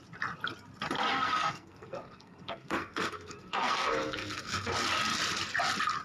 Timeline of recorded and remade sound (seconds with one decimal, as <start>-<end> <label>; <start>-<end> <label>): 0.0-1.1 recorded; 1.1-4.7 remade; 4.7-6.0 recorded